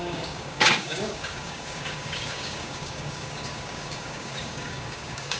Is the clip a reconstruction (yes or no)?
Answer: yes